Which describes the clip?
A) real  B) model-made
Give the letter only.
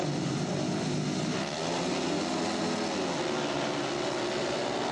A